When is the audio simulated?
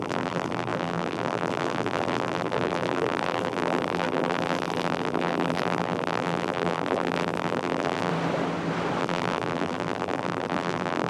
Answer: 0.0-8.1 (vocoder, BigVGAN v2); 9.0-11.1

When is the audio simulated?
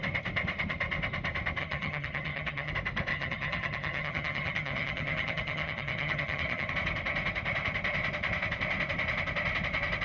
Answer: 1.6-2.7 (vocoder, HiFi-GAN); 3.1-6.7